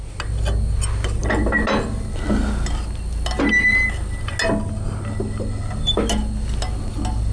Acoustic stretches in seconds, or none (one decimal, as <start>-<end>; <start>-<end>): 0.0-7.3